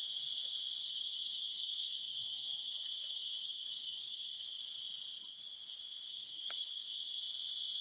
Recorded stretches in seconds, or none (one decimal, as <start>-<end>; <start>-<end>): 0.0-0.8; 4.6-6.1; 7.2-7.8